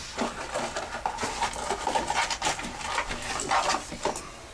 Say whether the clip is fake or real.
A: real